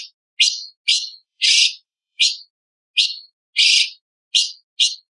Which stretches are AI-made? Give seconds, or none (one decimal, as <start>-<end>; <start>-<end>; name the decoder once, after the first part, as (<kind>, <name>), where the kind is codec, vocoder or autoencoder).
0.9-2.3 (vocoder, Vocos)

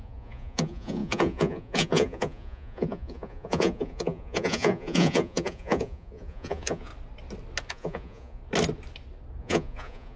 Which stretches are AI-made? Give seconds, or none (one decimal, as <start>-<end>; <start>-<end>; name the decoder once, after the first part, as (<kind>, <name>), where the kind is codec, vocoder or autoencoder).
0.0-6.9 (vocoder, Vocos); 7.7-8.4; 9.4-10.2

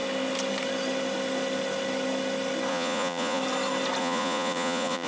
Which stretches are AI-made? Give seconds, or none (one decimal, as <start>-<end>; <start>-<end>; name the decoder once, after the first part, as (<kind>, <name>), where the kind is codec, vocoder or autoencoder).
2.7-3.4 (vocoder, Vocos); 4.0-5.1

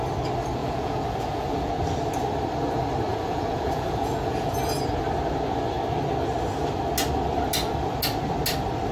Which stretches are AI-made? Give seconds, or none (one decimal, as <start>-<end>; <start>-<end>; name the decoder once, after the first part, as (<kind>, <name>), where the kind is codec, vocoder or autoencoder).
0.6-1.7 (vocoder, Vocos); 3.1-4.5